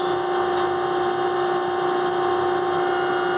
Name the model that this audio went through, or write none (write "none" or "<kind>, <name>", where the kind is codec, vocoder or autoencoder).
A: none